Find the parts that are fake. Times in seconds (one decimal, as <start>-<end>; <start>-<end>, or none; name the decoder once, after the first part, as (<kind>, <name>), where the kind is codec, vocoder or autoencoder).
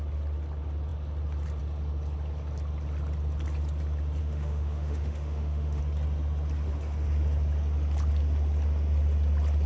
4.2-5.8 (autoencoder, DAC-VAE)